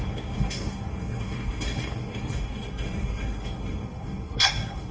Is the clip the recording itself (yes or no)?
no